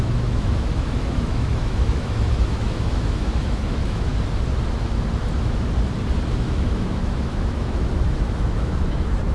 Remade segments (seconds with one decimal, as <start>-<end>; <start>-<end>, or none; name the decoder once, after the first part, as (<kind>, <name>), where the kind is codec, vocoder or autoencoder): 0.0-4.1 (autoencoder, DAC-VAE); 6.3-9.3